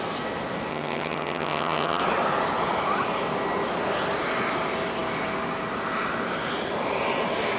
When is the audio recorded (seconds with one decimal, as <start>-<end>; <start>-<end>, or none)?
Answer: 0.0-0.7; 2.0-7.6